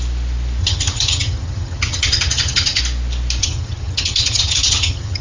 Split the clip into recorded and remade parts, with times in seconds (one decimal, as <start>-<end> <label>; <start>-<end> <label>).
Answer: 0.0-0.6 recorded; 0.6-2.8 remade; 2.8-3.4 recorded; 3.4-5.2 remade

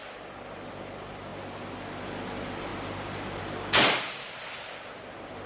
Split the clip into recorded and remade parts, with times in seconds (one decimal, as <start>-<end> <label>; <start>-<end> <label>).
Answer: 0.0-5.5 recorded

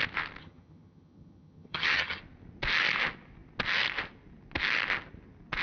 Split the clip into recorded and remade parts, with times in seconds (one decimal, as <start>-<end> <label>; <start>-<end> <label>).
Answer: 0.0-0.4 recorded; 0.4-2.2 remade; 2.2-5.6 recorded

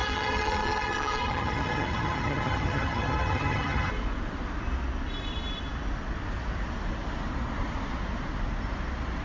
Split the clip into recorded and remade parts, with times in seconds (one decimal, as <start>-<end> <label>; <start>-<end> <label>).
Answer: 0.0-3.9 remade; 3.9-9.2 recorded

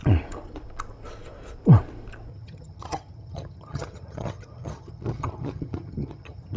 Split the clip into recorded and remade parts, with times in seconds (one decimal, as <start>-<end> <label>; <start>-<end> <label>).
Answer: 0.0-2.3 recorded; 2.3-6.6 remade

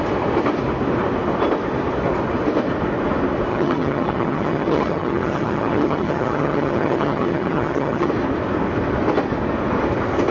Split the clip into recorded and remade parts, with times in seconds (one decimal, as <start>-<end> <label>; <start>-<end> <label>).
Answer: 0.0-3.5 recorded; 3.5-8.1 remade; 8.1-10.3 recorded

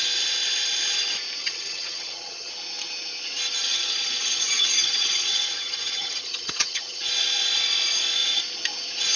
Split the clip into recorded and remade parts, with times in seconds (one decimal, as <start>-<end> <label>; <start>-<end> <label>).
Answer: 0.0-1.4 recorded; 1.4-2.5 remade; 2.5-3.6 recorded; 3.6-7.0 remade; 7.0-9.2 recorded

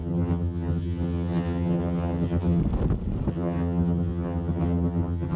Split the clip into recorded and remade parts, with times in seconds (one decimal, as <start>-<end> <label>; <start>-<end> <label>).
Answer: 0.0-2.6 remade; 2.6-3.3 recorded; 3.3-5.4 remade